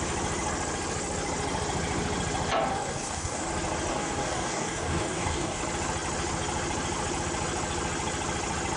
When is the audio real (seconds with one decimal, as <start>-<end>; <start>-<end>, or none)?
0.0-2.7; 3.5-3.9; 5.6-8.8